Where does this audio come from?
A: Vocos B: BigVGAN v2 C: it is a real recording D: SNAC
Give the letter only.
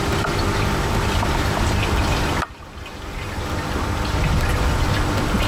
C